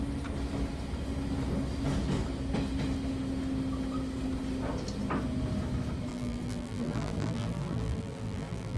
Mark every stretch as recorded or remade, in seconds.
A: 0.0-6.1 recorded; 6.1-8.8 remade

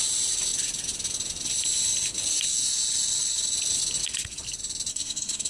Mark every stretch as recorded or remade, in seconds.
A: 0.0-4.9 recorded; 4.9-5.5 remade

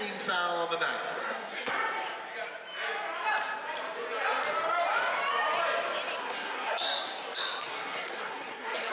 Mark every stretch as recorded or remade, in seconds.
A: 0.0-1.2 recorded; 1.2-1.7 remade; 1.7-6.2 recorded; 6.2-7.0 remade; 7.0-7.7 recorded; 7.7-8.9 remade

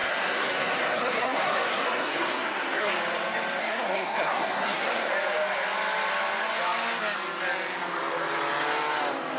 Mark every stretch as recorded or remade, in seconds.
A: 0.0-2.9 remade; 2.9-3.6 recorded; 3.6-5.1 remade; 5.1-9.4 recorded

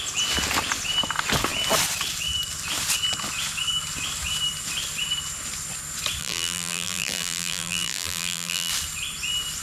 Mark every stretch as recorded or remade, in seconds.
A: 0.0-6.2 recorded; 6.2-8.7 remade; 8.7-9.6 recorded

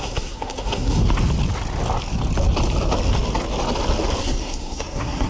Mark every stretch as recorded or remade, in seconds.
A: 0.0-1.0 remade; 1.0-4.2 recorded; 4.2-5.3 remade

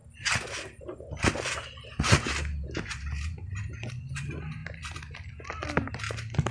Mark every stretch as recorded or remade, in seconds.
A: 0.0-6.5 recorded